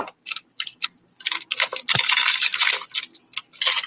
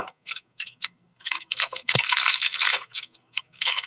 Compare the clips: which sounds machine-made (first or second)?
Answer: second